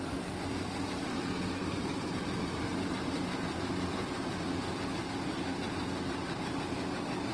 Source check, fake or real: fake